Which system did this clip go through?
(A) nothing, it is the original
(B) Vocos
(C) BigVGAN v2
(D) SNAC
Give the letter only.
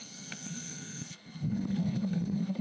D